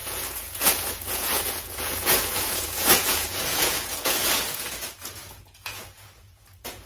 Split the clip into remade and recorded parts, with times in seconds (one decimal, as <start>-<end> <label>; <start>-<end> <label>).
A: 0.0-6.9 remade